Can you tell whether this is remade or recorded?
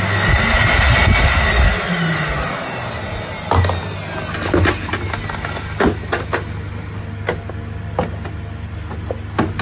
recorded